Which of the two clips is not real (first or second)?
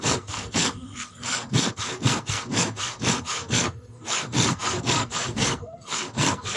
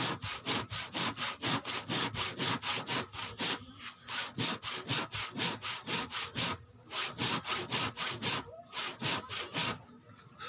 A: first